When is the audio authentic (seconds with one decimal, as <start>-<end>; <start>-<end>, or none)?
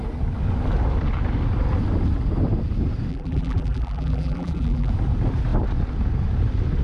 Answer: 0.0-3.1; 4.9-6.8